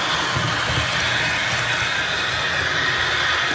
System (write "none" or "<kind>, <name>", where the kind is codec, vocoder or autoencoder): none